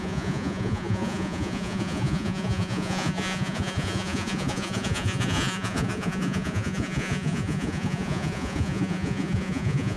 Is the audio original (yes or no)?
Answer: no